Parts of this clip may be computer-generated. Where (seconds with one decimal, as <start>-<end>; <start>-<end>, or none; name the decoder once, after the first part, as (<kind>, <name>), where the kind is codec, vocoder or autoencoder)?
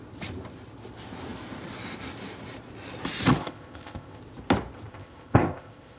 3.4-4.2 (codec, ZipCodec); 4.9-6.0